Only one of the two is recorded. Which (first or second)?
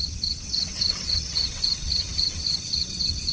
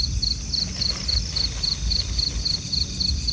second